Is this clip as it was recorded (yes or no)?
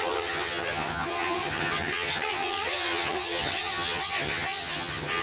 no